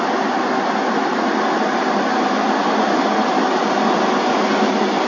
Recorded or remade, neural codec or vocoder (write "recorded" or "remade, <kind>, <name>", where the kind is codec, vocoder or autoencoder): recorded